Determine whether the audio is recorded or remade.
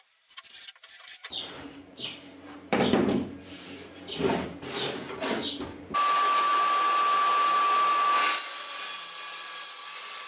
recorded